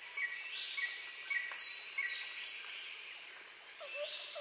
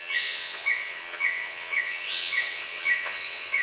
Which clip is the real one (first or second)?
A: first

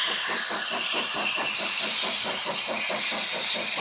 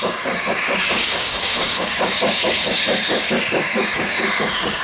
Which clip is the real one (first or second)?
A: first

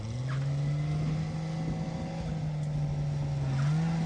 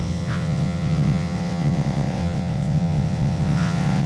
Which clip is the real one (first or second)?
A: first